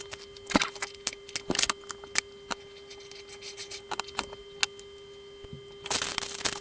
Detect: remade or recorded recorded